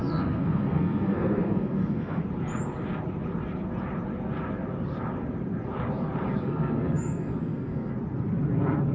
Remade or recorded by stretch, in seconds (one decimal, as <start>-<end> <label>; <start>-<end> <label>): 0.0-2.2 remade; 2.2-6.4 recorded; 6.4-7.9 remade; 7.9-8.9 recorded